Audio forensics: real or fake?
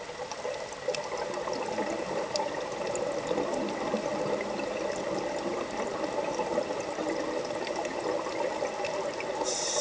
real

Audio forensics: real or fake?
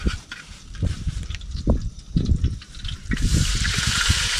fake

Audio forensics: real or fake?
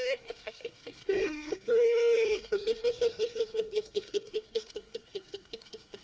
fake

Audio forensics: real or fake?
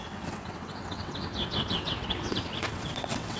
fake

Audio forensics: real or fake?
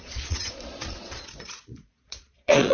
fake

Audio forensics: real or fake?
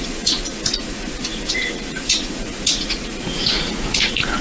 fake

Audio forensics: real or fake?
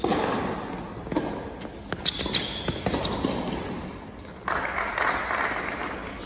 real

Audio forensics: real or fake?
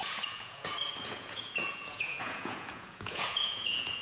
fake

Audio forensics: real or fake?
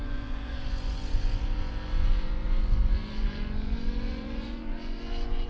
fake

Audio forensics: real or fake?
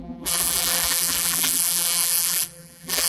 fake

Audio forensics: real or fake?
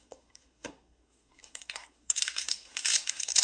fake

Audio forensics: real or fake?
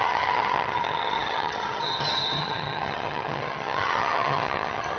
fake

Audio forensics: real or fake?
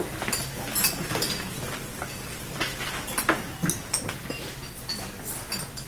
real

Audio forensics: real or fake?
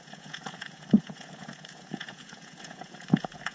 fake